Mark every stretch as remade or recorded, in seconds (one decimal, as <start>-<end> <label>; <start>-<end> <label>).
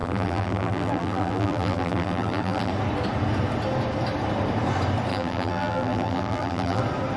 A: 0.0-2.7 remade; 2.7-5.1 recorded; 5.1-6.8 remade; 6.8-7.2 recorded